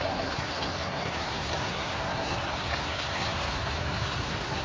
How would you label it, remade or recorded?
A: remade